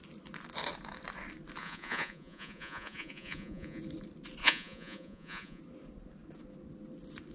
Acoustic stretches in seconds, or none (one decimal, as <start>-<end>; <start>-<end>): 0.0-1.6; 3.8-4.4; 5.6-7.3